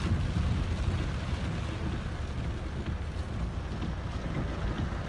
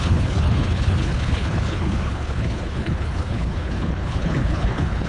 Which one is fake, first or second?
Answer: second